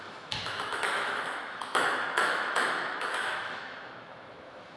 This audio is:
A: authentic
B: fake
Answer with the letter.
B